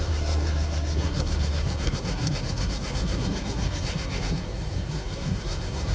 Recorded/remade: remade